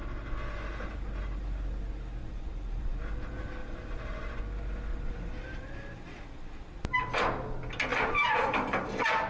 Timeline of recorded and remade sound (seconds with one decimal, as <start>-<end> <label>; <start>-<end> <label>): 0.0-2.2 recorded; 2.2-3.0 remade; 3.0-3.6 recorded; 3.6-4.4 remade; 4.4-4.9 recorded; 4.9-6.3 remade; 6.3-7.9 recorded; 7.9-8.9 remade; 8.9-9.3 recorded